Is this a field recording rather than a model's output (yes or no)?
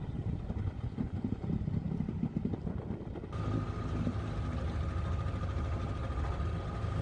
yes